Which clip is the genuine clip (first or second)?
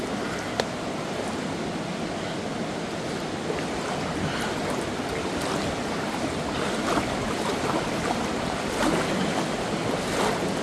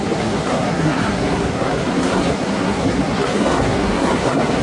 first